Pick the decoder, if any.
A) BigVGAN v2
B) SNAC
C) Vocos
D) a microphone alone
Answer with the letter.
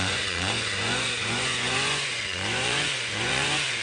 C